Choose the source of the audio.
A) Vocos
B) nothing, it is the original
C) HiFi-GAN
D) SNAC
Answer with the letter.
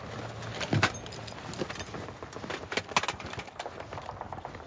B